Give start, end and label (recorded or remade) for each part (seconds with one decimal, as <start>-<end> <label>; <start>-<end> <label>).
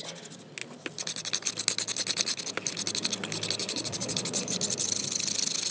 0.0-3.6 recorded; 3.6-4.5 remade; 4.5-5.7 recorded